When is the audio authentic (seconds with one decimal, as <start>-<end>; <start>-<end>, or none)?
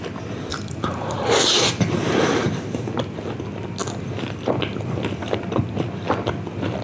0.0-0.5; 2.9-6.8